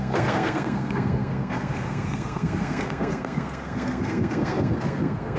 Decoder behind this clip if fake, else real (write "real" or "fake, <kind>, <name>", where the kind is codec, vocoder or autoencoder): fake, codec, SNAC